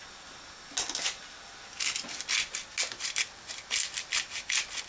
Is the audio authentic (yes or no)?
yes